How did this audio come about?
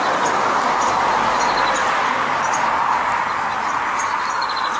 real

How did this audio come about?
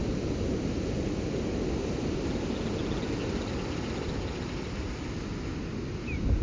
real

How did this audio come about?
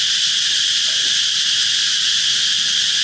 real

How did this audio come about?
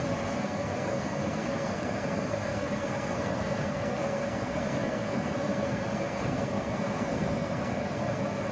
fake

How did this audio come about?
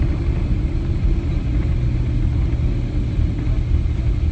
real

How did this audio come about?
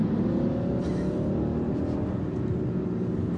real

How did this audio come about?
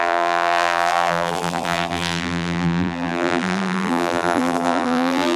fake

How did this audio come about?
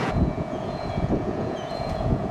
fake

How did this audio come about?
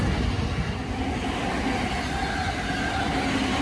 real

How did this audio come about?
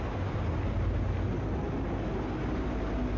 real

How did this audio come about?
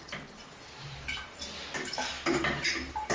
fake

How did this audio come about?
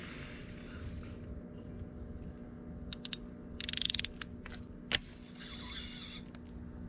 real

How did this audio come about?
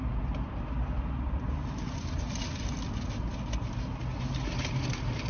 real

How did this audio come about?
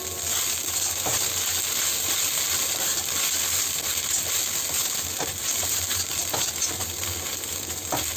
real